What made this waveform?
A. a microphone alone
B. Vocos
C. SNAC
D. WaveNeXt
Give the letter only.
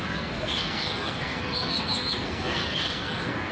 C